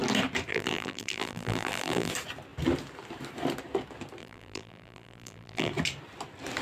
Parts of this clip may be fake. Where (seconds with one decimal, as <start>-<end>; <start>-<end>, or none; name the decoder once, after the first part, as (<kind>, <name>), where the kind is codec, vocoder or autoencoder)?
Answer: 0.5-2.1 (vocoder, BigVGAN v2); 4.2-5.7